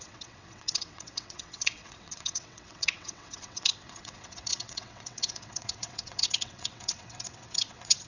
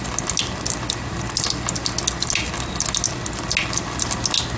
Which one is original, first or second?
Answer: second